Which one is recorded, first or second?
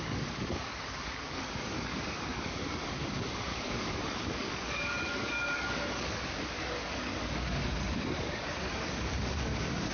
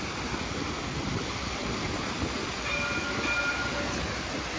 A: second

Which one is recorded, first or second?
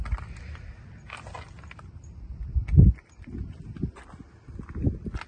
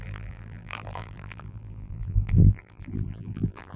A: first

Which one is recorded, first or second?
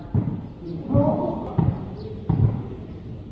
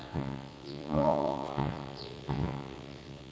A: first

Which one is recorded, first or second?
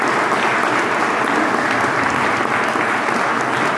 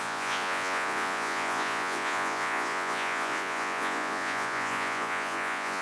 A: first